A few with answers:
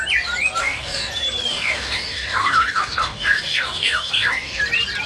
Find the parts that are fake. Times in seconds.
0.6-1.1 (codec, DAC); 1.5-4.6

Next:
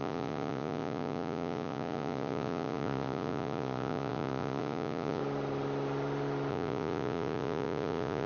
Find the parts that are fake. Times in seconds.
0.0-5.2 (vocoder, Vocos); 6.5-8.3

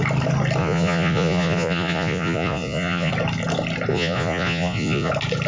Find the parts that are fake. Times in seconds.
0.6-3.1 (vocoder, Vocos); 3.9-5.1

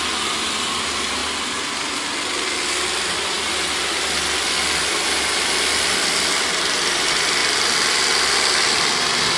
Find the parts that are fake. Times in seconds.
0.0-1.2 (vocoder, BigVGAN v2); 6.4-9.4

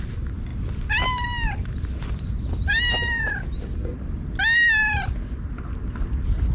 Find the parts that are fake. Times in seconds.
none

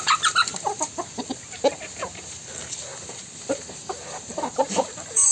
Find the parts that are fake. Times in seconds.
2.9-5.3 (vocoder, BigVGAN v2)

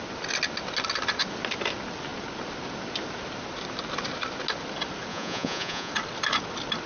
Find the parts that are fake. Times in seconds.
5.1-5.9 (vocoder, Vocos)

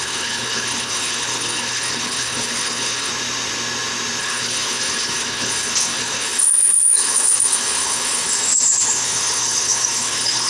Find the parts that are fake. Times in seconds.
0.0-3.1 (codec, HILCodec); 4.2-10.5